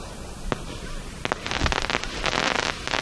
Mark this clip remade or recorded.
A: recorded